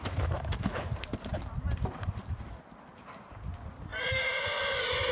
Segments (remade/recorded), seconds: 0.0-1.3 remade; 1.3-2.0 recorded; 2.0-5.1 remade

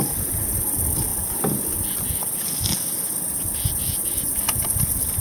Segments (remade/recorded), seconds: 0.0-5.2 recorded